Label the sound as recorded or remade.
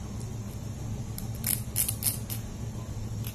recorded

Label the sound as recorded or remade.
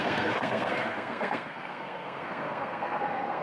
remade